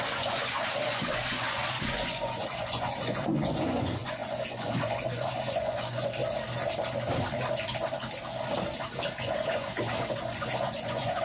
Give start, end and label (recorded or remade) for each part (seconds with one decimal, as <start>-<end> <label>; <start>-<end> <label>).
0.0-6.2 remade; 6.2-9.2 recorded; 9.2-11.2 remade